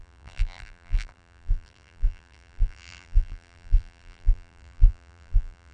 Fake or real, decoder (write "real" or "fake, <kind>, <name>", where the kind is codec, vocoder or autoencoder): fake, vocoder, BigVGAN v2